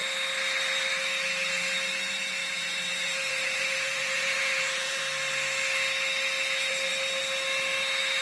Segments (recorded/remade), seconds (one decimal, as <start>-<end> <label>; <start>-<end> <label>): 0.0-2.4 recorded; 2.4-5.0 remade; 5.0-8.2 recorded